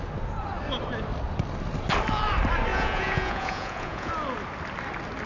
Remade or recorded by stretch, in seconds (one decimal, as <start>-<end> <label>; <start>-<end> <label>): 0.0-2.7 recorded; 2.7-4.1 remade; 4.1-5.3 recorded